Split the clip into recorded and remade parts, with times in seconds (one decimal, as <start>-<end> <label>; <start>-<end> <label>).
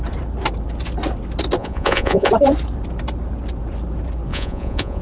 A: 0.0-1.6 recorded; 1.6-2.3 remade; 2.3-4.3 recorded; 4.3-5.0 remade